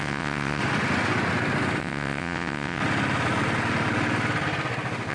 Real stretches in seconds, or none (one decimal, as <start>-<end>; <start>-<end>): 0.6-1.8; 2.8-5.1

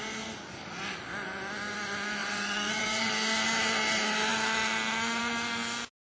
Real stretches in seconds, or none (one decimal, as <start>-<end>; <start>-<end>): 0.0-2.2; 3.1-6.1

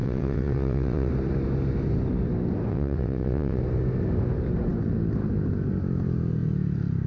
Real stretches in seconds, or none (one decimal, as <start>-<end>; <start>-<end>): 1.1-2.7; 3.6-7.1

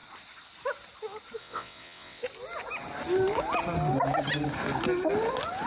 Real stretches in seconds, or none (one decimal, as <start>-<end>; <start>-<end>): 0.0-1.4; 2.2-5.7

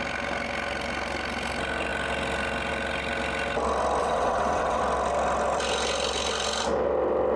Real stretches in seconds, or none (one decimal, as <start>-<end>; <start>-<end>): 0.0-4.0; 4.8-7.4

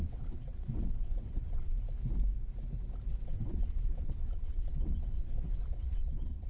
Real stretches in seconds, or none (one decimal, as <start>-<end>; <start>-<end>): 1.7-3.1

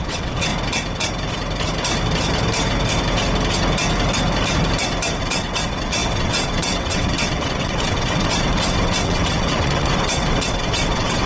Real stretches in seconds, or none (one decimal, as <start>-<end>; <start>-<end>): 0.5-5.2

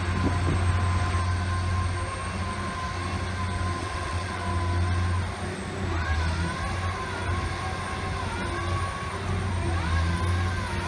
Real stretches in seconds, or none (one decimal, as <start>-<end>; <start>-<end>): 0.0-3.8; 4.4-10.9